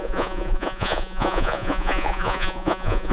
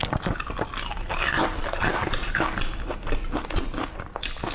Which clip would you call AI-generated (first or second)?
first